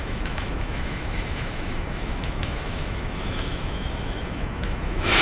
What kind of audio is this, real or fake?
fake